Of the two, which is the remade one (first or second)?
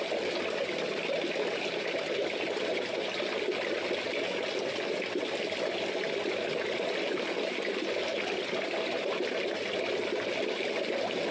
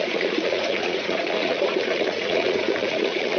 second